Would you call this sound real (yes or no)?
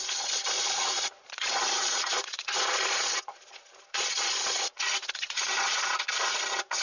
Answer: no